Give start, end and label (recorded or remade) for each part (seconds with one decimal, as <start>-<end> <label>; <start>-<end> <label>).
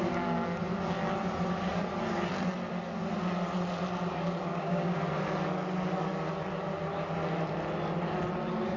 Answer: 0.0-4.5 recorded; 4.5-5.0 remade; 5.0-8.8 recorded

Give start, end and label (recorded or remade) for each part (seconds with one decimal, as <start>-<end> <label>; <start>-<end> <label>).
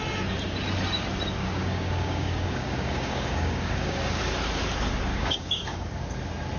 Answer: 0.0-1.4 recorded; 1.4-4.2 remade; 4.2-5.1 recorded; 5.1-5.9 remade; 5.9-6.6 recorded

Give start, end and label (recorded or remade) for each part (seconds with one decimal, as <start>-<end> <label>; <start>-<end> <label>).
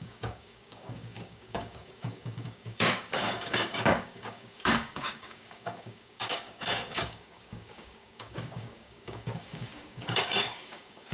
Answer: 0.0-11.1 remade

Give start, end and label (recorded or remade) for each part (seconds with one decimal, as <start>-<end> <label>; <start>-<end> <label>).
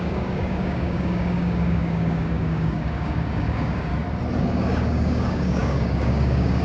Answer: 0.0-3.9 remade; 3.9-4.4 recorded; 4.4-6.6 remade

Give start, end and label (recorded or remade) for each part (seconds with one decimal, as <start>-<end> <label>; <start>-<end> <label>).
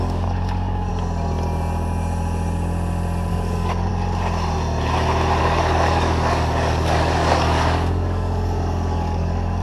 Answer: 0.0-0.9 remade; 0.9-3.3 recorded; 3.3-3.9 remade; 3.9-5.4 recorded; 5.4-9.6 remade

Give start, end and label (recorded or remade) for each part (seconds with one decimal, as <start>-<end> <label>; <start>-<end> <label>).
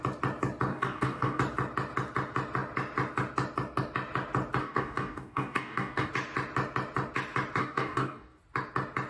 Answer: 0.0-0.7 recorded; 0.7-1.4 remade; 1.4-4.6 recorded; 4.6-6.1 remade; 6.1-7.6 recorded; 7.6-8.4 remade; 8.4-9.1 recorded